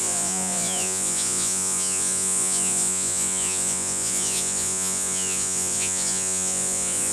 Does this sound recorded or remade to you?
remade